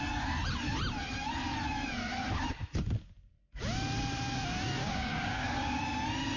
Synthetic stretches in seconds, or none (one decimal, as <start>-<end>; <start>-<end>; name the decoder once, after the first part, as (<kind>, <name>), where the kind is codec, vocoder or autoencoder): 4.8-5.8 (codec, DAC)